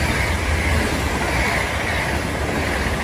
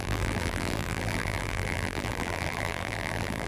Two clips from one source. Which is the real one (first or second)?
first